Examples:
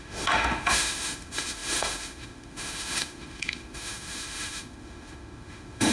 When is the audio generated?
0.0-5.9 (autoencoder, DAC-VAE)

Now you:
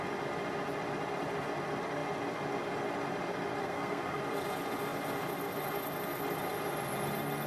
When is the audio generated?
3.6-4.2 (codec, SNAC)